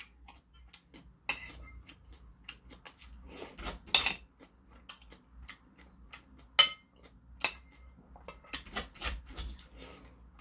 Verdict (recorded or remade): recorded